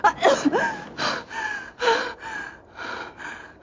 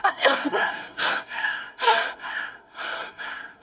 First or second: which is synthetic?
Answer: second